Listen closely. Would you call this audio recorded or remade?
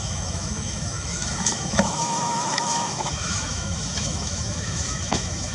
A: remade